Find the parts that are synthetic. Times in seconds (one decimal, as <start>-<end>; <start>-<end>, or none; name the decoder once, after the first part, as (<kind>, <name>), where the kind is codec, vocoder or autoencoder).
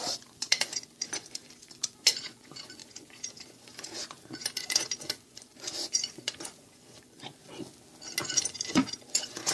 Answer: 0.0-7.4 (vocoder, Vocos); 8.2-9.5